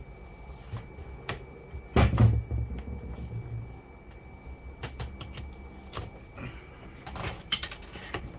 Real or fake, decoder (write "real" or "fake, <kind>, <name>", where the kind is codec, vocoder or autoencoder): real